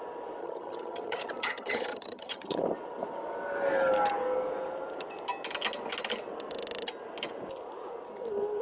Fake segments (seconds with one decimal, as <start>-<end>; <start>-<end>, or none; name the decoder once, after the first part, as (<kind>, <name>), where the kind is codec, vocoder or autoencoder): 0.4-2.6 (vocoder, HiFi-GAN)